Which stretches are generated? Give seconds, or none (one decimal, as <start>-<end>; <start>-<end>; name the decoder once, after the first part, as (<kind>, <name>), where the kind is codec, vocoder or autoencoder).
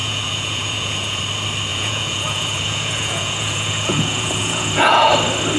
0.0-1.2 (vocoder, Vocos); 1.7-5.1